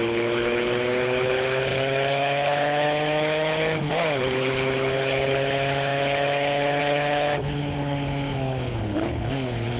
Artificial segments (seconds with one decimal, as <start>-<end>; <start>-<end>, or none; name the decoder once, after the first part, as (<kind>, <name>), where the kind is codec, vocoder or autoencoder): 0.0-9.8 (codec, HILCodec)

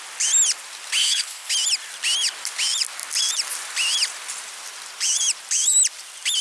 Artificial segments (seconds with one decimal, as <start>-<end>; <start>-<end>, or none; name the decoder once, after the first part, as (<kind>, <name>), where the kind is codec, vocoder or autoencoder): 1.0-1.5 (codec, HILCodec)

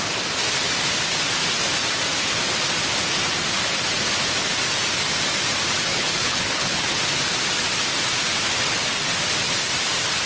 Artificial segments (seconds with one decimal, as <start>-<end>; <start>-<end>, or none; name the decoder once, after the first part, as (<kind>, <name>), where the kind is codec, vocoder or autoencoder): 5.9-6.9 (codec, HILCodec)

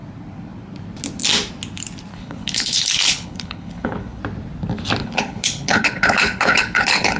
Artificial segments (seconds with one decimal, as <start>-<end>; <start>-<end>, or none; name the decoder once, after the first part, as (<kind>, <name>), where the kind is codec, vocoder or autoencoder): 2.1-4.2 (codec, HILCodec); 5.0-7.2

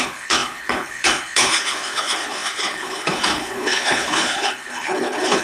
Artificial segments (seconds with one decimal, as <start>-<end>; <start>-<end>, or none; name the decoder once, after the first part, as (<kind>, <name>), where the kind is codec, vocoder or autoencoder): 0.0-5.4 (codec, HILCodec)